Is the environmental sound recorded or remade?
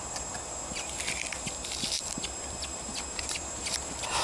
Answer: remade